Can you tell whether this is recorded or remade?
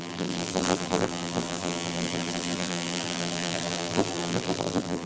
remade